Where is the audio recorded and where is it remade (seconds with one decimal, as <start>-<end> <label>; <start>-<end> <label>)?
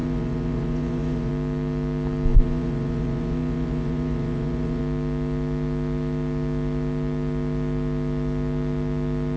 0.0-1.3 remade; 1.3-2.3 recorded; 2.3-4.8 remade; 4.8-9.4 recorded